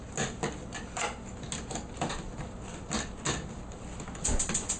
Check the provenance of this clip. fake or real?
real